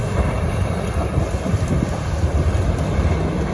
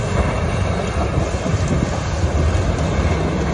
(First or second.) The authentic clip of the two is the second